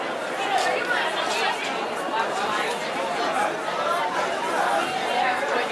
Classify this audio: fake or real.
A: real